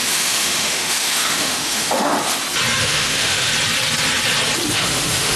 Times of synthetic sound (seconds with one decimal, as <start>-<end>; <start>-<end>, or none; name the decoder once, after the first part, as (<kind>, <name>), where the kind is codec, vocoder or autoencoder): 0.0-2.1 (autoencoder, DAC-VAE); 2.8-3.5; 4.7-5.4